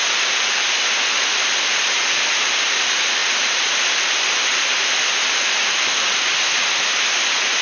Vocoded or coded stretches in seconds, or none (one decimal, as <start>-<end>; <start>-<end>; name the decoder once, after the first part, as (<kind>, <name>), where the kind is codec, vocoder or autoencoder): none